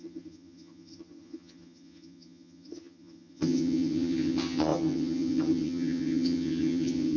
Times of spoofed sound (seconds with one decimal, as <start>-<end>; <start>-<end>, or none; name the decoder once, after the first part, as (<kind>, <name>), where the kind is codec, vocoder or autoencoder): 0.0-7.2 (vocoder, HiFi-GAN)